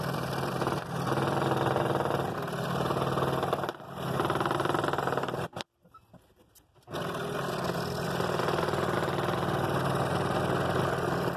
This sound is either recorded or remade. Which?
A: recorded